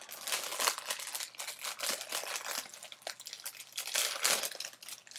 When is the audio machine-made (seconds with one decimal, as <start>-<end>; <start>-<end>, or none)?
none